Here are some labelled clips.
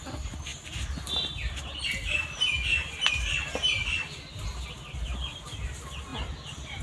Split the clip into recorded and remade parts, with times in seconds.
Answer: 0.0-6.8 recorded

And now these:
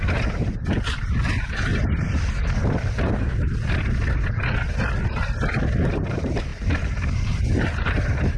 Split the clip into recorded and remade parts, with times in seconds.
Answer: 0.0-1.7 remade; 1.7-5.8 recorded; 5.8-8.4 remade

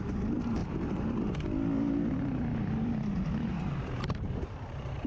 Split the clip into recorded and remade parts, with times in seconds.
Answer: 0.0-0.6 recorded; 0.6-1.2 remade; 1.2-3.5 recorded; 3.5-5.1 remade

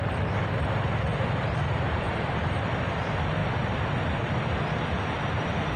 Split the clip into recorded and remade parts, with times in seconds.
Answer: 0.0-1.1 recorded; 1.1-2.7 remade; 2.7-5.8 recorded

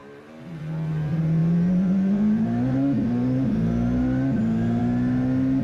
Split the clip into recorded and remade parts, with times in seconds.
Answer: 0.0-5.6 recorded

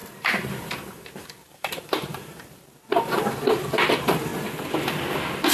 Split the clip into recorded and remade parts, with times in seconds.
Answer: 0.0-4.3 remade; 4.3-5.5 recorded

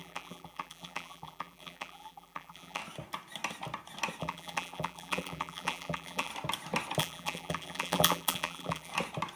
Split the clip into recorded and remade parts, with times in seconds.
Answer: 0.0-2.8 remade; 2.8-4.2 recorded; 4.2-6.3 remade; 6.3-7.0 recorded; 7.0-8.9 remade; 8.9-9.4 recorded